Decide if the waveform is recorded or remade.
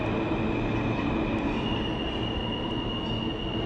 recorded